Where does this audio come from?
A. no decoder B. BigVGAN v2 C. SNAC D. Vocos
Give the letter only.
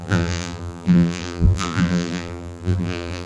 B